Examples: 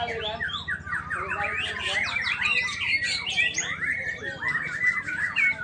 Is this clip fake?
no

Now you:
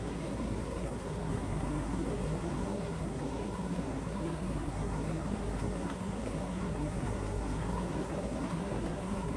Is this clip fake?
yes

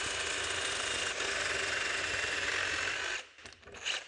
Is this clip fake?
no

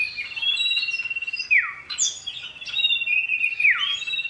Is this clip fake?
no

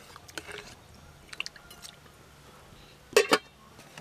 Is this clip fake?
no